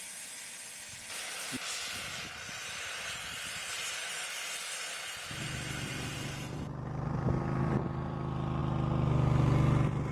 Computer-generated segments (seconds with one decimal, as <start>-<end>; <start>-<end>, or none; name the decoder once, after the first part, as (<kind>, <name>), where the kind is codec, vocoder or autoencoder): none